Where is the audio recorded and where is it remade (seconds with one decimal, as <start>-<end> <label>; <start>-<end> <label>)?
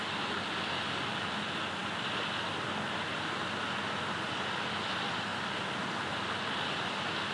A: 0.0-7.3 recorded